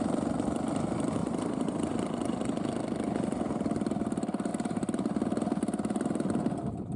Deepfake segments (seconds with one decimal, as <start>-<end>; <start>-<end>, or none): 1.2-1.9; 4.5-5.0